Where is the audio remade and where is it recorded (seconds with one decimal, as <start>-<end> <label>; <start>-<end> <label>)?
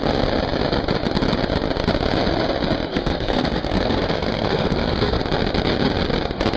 0.0-2.9 recorded; 2.9-5.2 remade; 5.2-6.6 recorded